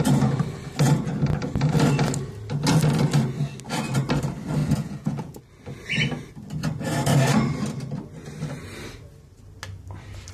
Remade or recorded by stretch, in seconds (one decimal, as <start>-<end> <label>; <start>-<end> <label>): 0.0-4.6 recorded; 4.6-5.4 remade; 5.4-10.3 recorded